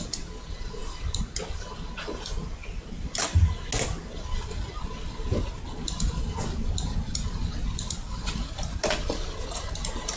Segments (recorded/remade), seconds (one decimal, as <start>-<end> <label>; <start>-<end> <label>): 0.0-10.2 recorded